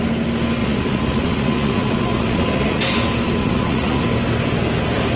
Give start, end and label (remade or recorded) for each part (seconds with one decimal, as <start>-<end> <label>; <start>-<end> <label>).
0.0-0.6 recorded; 0.6-2.8 remade; 2.8-3.4 recorded; 3.4-4.0 remade; 4.0-5.2 recorded